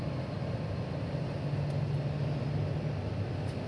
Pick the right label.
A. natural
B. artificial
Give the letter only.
A